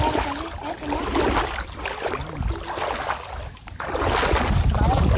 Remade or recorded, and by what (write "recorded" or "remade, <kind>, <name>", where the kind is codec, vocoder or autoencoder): recorded